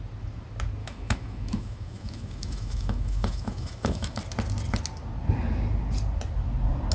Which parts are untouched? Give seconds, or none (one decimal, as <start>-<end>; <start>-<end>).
0.0-0.8; 4.2-6.9